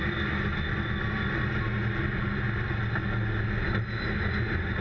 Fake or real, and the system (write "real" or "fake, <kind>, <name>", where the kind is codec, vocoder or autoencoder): real